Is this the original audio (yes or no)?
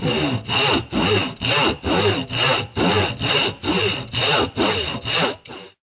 yes